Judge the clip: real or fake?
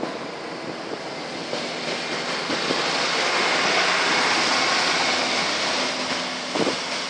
real